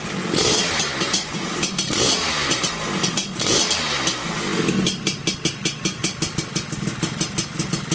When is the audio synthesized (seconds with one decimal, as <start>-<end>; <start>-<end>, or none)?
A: 0.4-2.7; 6.0-7.9